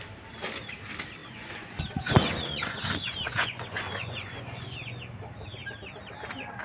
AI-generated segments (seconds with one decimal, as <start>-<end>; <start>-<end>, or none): 1.2-5.0